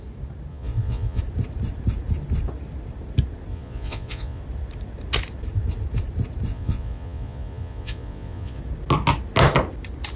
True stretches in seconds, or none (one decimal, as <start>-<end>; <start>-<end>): 0.0-0.5; 1.2-3.5; 4.4-6.5; 8.6-10.2

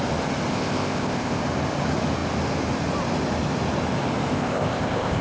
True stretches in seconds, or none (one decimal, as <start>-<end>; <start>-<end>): 0.0-0.5; 1.4-4.3

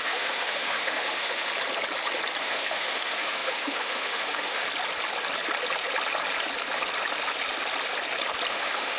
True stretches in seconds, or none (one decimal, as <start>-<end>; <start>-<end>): 1.5-2.4; 4.6-8.5

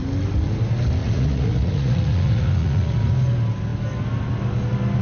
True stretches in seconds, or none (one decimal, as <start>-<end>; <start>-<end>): 0.0-1.0; 3.1-5.0

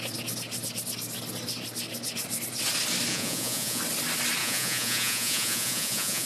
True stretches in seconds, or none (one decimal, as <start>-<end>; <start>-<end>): 0.0-3.1; 3.8-4.4

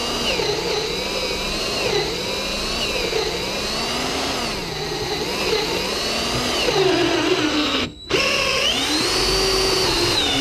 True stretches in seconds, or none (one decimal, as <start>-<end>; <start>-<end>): 0.0-7.5; 8.1-10.4

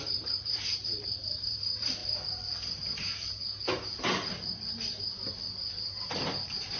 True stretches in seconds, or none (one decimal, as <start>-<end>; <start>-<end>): 2.0-6.0

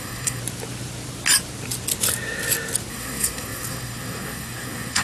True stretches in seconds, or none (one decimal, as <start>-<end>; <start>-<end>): 0.4-2.9